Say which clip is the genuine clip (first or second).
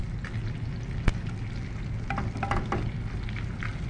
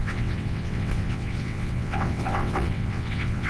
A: first